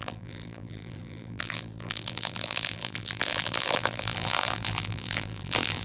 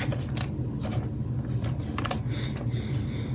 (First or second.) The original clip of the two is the second